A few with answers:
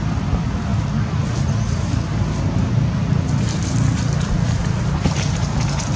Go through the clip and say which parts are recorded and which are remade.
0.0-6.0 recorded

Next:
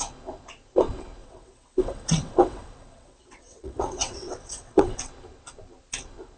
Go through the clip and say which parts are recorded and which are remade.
0.0-1.2 recorded; 1.2-5.0 remade; 5.0-6.4 recorded

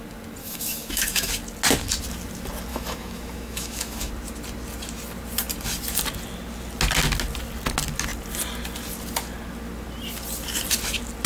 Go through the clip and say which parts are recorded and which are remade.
0.0-0.4 recorded; 0.4-1.3 remade; 1.3-2.7 recorded; 2.7-4.1 remade; 4.1-11.3 recorded

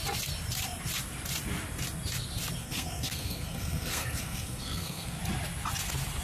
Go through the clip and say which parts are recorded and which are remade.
0.0-2.6 recorded; 2.6-5.2 remade; 5.2-6.2 recorded

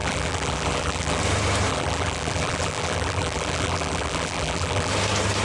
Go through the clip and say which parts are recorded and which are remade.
0.0-1.2 remade; 1.2-1.7 recorded; 1.7-4.9 remade; 4.9-5.4 recorded

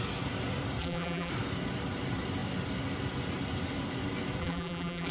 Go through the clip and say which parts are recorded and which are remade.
0.0-0.8 recorded; 0.8-1.3 remade; 1.3-4.4 recorded; 4.4-5.1 remade

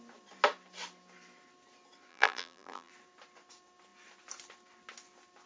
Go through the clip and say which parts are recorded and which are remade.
0.0-2.1 recorded; 2.1-2.9 remade; 2.9-5.5 recorded